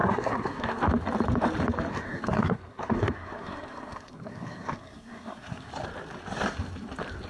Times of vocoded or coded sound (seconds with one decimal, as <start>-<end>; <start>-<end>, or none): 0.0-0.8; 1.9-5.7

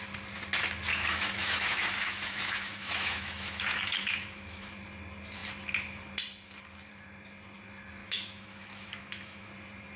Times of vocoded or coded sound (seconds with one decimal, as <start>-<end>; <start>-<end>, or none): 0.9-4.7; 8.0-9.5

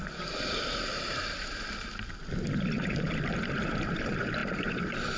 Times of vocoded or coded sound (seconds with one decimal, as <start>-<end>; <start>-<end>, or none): 0.0-5.2

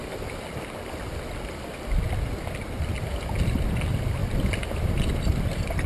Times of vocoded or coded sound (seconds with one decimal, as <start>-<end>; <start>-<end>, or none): none

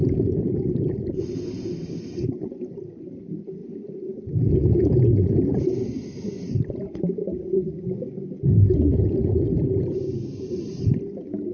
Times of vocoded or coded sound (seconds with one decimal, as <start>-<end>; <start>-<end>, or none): 1.8-2.7; 9.6-10.6

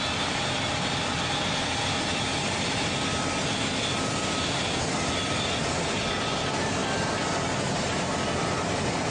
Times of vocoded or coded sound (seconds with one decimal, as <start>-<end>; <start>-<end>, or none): none

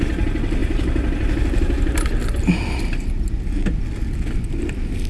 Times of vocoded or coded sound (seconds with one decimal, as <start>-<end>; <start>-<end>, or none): none